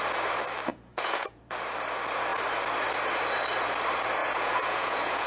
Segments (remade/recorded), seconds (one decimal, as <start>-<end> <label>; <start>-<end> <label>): 0.0-0.7 recorded; 0.7-1.4 remade; 1.4-4.2 recorded; 4.2-5.3 remade